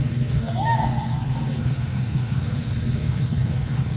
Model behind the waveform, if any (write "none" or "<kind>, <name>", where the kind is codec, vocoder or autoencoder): codec, SNAC